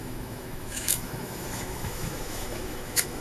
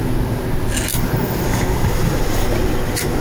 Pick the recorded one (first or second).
second